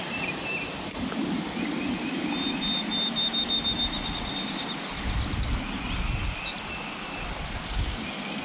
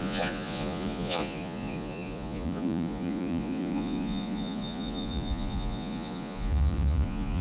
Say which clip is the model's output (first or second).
second